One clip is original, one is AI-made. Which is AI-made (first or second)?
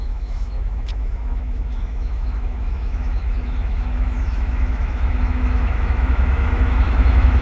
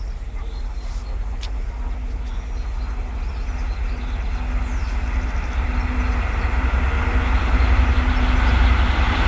first